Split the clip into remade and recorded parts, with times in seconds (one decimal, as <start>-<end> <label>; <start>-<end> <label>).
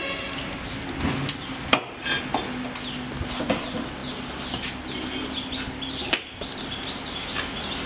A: 0.0-7.9 recorded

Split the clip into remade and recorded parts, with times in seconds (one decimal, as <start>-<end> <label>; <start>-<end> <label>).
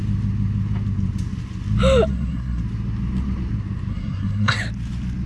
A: 0.0-2.1 recorded; 2.1-2.6 remade; 2.6-3.9 recorded; 3.9-4.6 remade; 4.6-5.3 recorded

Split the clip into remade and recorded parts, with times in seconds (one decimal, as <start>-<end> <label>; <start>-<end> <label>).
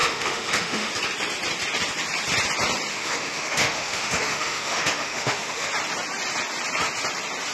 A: 0.0-0.9 remade; 0.9-2.9 recorded; 2.9-5.7 remade; 5.7-7.5 recorded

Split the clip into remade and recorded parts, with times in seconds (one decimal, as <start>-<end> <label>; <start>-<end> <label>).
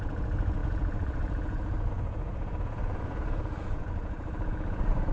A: 0.0-5.1 remade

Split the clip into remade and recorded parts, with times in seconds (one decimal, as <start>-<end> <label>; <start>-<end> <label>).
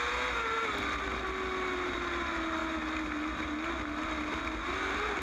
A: 0.0-5.2 recorded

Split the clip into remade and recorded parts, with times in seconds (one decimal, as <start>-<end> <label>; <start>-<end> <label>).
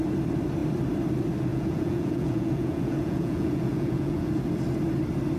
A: 0.0-1.5 recorded; 1.5-4.3 remade; 4.3-5.4 recorded